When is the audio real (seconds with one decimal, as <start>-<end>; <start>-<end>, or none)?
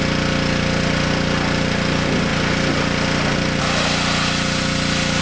0.0-5.2